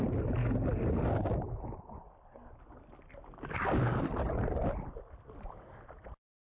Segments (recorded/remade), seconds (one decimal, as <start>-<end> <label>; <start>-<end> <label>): 0.0-6.4 recorded